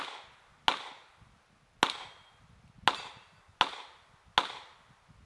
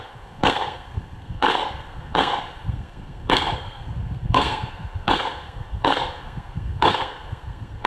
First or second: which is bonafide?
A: first